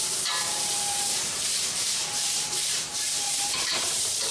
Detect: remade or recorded remade